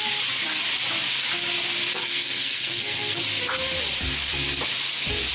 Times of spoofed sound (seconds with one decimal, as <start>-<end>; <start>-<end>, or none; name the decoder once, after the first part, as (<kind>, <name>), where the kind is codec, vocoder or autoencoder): 1.9-3.2 (codec, SNAC)